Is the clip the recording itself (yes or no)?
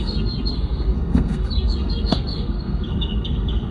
no